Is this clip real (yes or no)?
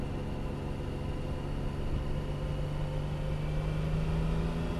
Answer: yes